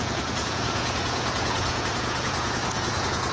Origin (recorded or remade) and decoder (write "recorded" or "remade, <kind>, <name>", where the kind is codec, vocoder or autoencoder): remade, vocoder, Vocos